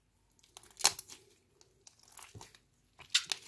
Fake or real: real